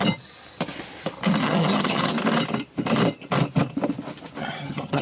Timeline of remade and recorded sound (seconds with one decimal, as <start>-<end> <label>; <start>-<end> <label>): 0.0-1.4 recorded; 1.4-2.1 remade; 2.1-4.4 recorded; 4.4-5.0 remade